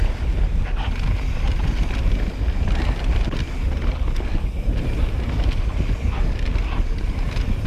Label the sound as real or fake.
real